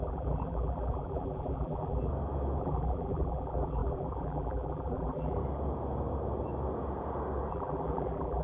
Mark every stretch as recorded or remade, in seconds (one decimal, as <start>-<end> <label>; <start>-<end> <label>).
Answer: 0.0-2.1 remade; 2.1-2.6 recorded; 2.6-5.4 remade; 5.4-7.5 recorded; 7.5-8.4 remade